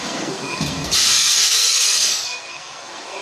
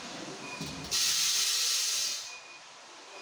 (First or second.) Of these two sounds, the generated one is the first